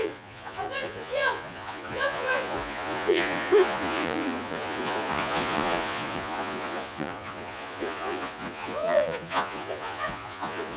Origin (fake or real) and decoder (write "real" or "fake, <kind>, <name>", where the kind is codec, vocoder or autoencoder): fake, vocoder, Vocos